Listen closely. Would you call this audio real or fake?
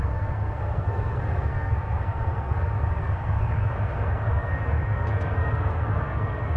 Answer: fake